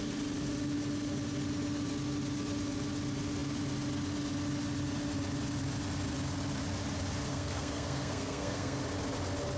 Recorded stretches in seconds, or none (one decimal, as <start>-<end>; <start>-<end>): 0.0-7.3; 8.8-9.6